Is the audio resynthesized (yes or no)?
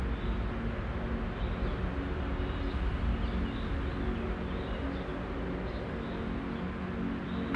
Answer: no